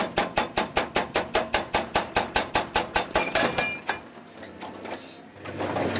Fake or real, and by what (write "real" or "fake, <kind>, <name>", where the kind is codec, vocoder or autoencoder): real